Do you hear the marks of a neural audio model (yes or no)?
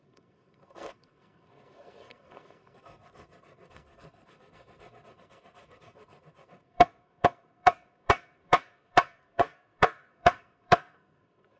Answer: yes